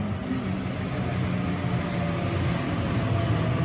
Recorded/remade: recorded